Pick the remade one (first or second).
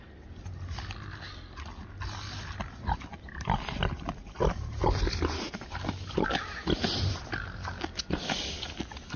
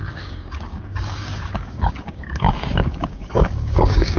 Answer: second